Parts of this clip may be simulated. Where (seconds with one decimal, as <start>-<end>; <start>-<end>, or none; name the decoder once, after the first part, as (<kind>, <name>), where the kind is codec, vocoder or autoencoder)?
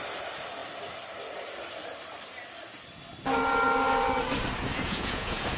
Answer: 4.7-5.6 (vocoder, Vocos)